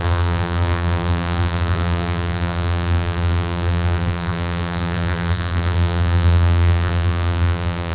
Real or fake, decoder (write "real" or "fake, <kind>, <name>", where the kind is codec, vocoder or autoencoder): fake, vocoder, BigVGAN v2